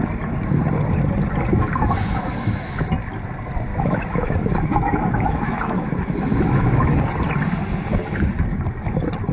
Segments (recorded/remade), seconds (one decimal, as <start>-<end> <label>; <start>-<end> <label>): 0.0-1.5 recorded; 1.5-2.9 remade; 2.9-3.7 recorded; 3.7-7.0 remade; 7.0-9.3 recorded